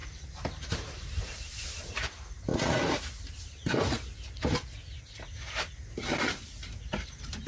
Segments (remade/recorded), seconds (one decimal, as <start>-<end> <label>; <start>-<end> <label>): 0.0-2.5 remade; 2.5-6.2 recorded; 6.2-7.5 remade